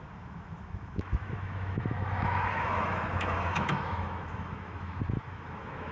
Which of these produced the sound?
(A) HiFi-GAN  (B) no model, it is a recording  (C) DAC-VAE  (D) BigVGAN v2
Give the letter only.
C